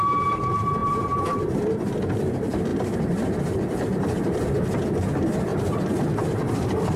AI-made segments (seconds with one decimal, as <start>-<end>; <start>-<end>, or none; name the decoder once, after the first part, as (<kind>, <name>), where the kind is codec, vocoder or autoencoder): 0.8-1.6 (vocoder, BigVGAN v2); 3.9-4.5